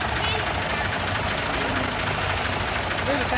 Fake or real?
real